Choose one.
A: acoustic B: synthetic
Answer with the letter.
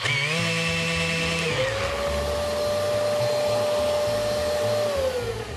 A